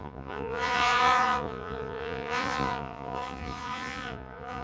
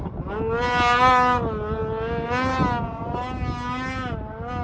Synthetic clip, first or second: first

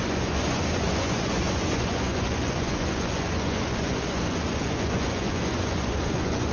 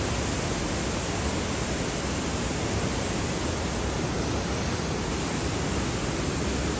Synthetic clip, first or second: first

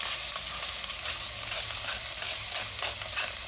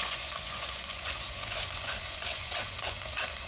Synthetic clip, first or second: second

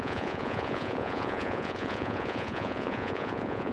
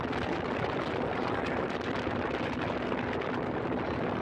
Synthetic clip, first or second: first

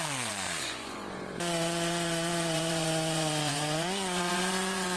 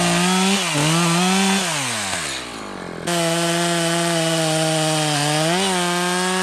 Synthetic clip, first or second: first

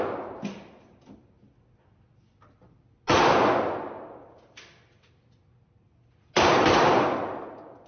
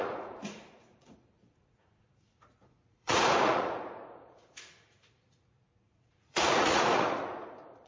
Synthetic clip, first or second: second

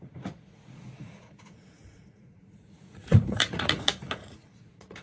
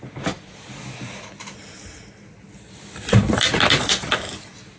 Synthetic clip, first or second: first